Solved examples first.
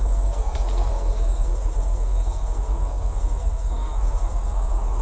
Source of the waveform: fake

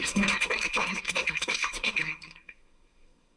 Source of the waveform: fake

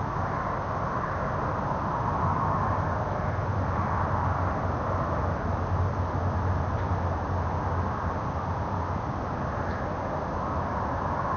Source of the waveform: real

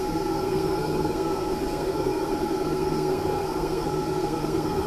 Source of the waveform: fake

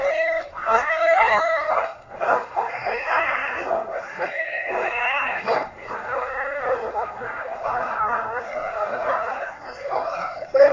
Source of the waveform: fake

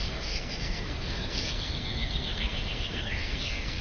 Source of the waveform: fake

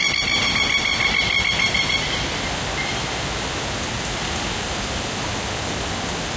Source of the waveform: real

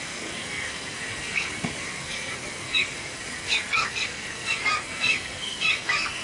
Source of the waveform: fake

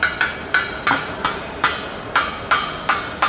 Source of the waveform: real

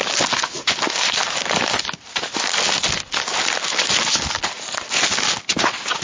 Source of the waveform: real